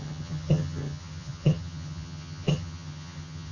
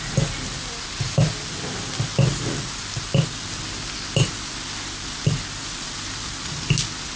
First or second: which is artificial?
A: first